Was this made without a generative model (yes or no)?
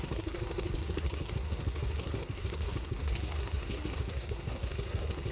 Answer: no